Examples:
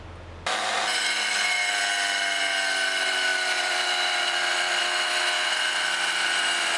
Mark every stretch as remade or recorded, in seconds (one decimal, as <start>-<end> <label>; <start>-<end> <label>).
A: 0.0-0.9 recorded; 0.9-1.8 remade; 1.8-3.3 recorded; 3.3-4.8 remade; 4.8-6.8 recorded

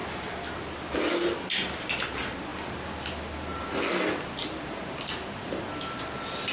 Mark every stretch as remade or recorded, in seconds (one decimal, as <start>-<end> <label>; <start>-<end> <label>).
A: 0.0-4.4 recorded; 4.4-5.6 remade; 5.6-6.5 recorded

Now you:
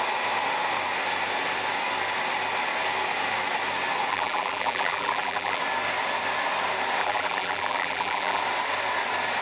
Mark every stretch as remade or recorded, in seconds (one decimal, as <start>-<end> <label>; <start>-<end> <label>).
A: 0.0-4.1 recorded; 4.1-5.6 remade; 5.6-7.0 recorded; 7.0-8.4 remade; 8.4-9.4 recorded

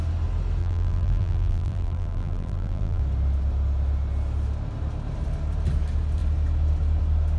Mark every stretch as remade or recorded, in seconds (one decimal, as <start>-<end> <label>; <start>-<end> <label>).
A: 0.0-0.6 recorded; 0.6-3.0 remade; 3.0-7.4 recorded

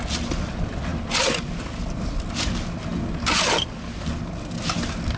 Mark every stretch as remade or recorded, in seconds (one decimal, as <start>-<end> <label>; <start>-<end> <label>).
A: 0.0-5.2 recorded

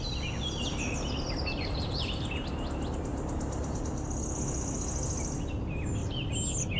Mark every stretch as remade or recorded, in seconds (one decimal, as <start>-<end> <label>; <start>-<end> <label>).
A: 0.0-0.7 recorded; 0.7-2.5 remade; 2.5-3.1 recorded; 3.1-3.8 remade; 3.8-6.8 recorded

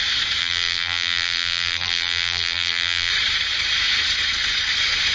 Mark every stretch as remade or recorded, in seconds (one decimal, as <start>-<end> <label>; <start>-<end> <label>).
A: 0.0-0.4 recorded; 0.4-3.1 remade; 3.1-5.1 recorded